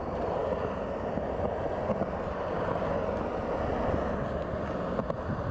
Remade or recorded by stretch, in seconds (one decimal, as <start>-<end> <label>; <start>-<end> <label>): 0.0-5.5 recorded